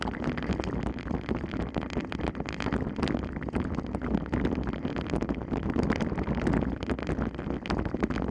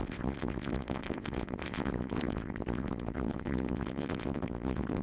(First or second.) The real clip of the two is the first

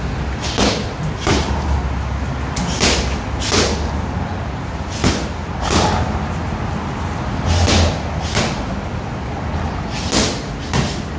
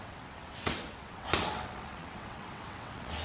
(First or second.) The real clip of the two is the first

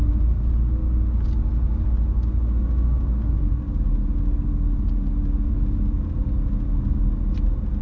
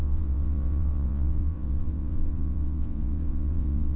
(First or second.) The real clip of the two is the first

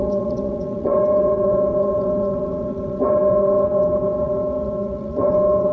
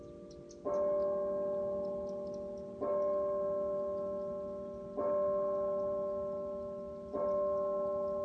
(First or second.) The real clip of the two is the second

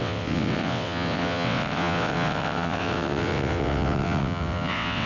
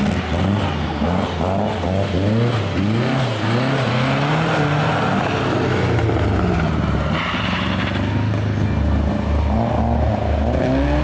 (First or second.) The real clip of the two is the second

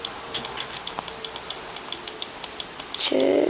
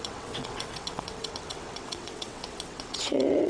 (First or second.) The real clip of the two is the first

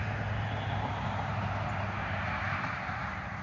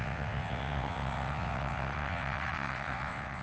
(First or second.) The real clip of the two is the first